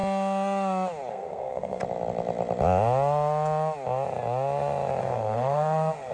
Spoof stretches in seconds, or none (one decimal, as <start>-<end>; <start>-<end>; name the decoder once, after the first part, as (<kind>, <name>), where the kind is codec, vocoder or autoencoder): 1.1-1.8 (codec, SNAC); 5.0-6.1

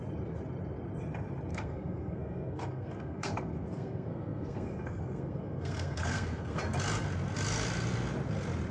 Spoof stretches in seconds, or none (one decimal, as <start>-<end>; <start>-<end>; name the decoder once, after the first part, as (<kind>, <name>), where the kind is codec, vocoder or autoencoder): 1.5-6.6 (codec, SNAC)

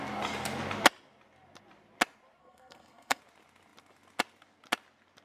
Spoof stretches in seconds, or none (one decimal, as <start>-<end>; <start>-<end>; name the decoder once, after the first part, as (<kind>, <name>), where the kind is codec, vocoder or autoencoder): 2.4-3.2 (codec, SNAC)

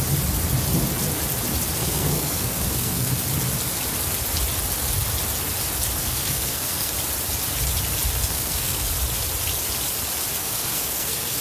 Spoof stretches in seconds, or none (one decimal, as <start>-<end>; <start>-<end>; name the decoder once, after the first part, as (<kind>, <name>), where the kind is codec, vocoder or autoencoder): 1.8-3.1 (codec, SNAC); 6.0-6.9; 8.2-8.9; 10.4-11.4

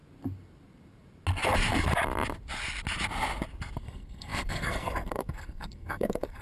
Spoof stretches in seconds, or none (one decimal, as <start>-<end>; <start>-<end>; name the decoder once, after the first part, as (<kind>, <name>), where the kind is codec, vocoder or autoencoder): 3.8-6.4 (codec, SNAC)

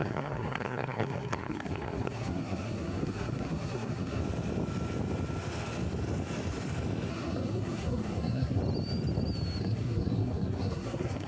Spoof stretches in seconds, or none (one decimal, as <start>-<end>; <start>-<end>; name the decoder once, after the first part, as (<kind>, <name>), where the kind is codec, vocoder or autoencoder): 0.0-4.2 (codec, SNAC); 7.1-8.6; 9.6-11.3

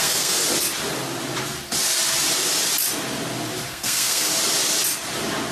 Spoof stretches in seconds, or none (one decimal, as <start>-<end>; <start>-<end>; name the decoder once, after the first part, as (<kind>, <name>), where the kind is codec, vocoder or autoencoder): 0.0-0.4 (codec, SNAC); 3.7-4.3